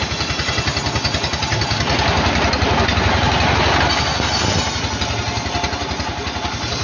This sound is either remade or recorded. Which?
recorded